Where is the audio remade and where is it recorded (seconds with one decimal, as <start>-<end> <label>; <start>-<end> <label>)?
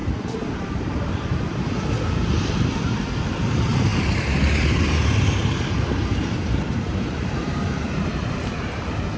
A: 0.0-0.6 recorded; 0.6-3.9 remade; 3.9-4.9 recorded; 4.9-9.2 remade